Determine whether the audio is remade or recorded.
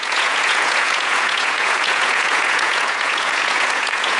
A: remade